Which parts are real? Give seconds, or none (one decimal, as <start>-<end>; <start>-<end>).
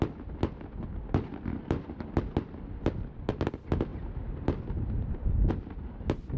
0.0-6.4